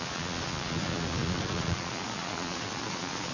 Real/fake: fake